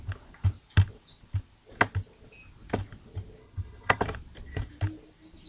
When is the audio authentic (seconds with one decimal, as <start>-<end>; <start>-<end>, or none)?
0.0-3.4; 4.0-5.5